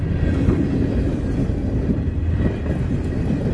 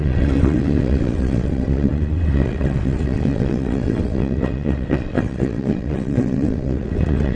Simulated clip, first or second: second